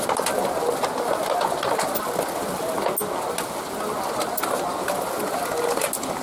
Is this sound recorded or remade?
recorded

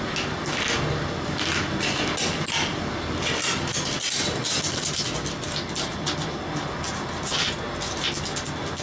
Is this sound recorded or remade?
recorded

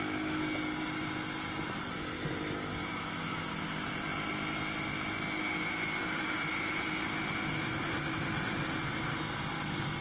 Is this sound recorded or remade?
recorded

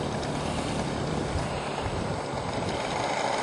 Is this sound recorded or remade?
remade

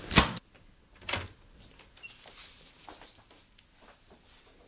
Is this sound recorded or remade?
recorded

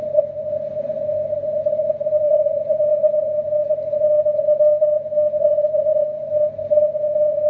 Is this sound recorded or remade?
recorded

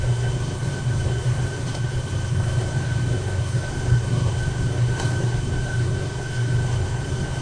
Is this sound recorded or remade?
remade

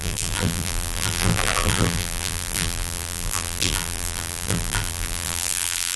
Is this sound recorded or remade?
remade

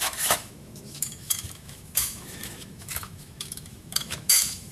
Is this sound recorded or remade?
remade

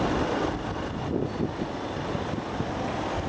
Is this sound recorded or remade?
recorded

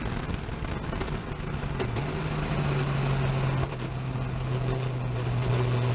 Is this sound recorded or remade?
recorded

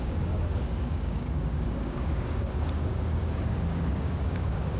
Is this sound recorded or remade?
remade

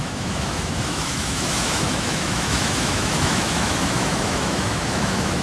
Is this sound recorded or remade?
remade